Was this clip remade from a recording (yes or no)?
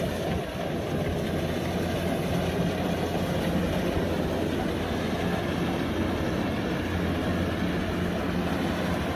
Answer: no